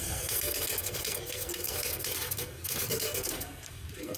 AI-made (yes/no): yes